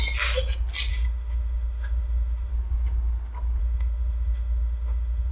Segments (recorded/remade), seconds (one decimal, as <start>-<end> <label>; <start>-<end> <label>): 0.0-0.9 recorded; 0.9-2.5 remade; 2.5-3.6 recorded; 3.6-5.3 remade